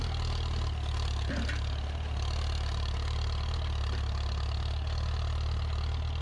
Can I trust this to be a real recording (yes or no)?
yes